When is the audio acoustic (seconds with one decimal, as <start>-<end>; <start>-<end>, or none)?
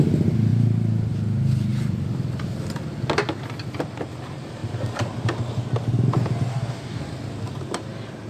0.0-6.5; 7.0-8.3